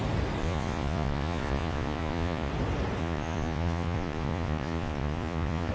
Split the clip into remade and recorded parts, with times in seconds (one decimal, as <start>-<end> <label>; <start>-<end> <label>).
0.0-0.4 recorded; 0.4-2.5 remade; 2.5-3.0 recorded; 3.0-5.7 remade

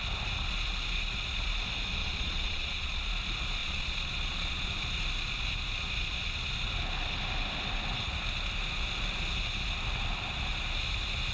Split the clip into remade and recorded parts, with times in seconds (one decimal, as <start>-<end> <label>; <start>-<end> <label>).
0.0-2.0 recorded; 2.0-3.0 remade; 3.0-3.6 recorded; 3.6-4.7 remade; 4.7-11.3 recorded

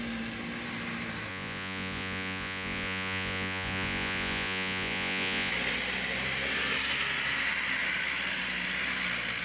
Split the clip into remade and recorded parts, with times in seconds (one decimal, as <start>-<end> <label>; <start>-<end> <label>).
0.0-1.3 recorded; 1.3-5.5 remade; 5.5-9.4 recorded

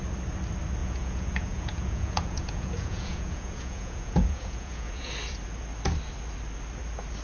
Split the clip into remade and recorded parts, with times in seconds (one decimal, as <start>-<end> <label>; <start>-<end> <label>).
0.0-0.8 recorded; 0.8-5.1 remade; 5.1-7.2 recorded

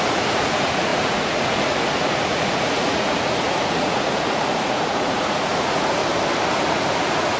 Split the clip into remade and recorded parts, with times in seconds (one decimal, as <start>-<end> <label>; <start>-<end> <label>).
0.0-6.0 remade; 6.0-6.7 recorded; 6.7-7.4 remade